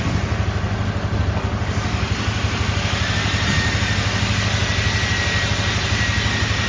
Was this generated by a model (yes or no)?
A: no